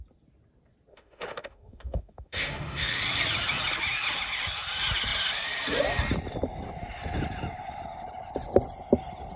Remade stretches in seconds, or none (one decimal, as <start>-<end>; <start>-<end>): 0.9-3.0

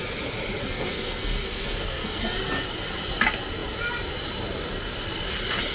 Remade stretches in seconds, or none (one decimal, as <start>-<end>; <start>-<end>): 0.6-2.2

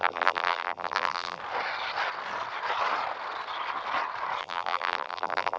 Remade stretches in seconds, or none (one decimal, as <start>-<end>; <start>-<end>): 0.0-1.4; 4.4-5.6

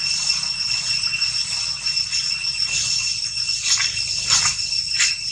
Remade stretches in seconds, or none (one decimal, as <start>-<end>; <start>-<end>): none

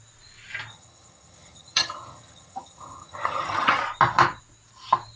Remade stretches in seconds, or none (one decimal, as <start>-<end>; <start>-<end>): 0.7-3.8

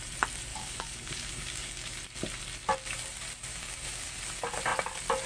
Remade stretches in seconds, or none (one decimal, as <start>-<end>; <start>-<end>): 0.5-2.0; 3.5-4.2

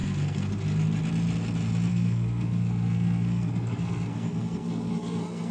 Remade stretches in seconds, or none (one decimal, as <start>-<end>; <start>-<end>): 0.0-0.5; 1.9-5.5